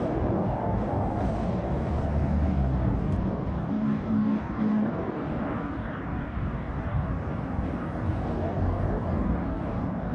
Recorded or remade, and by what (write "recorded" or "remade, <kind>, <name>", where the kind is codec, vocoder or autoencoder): remade, codec, DAC